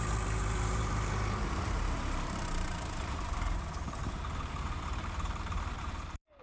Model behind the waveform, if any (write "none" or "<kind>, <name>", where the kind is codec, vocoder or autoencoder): vocoder, BigVGAN v2